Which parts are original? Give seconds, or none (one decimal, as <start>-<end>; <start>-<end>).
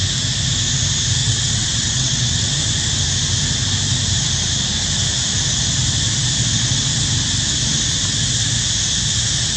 0.0-1.2; 2.5-9.6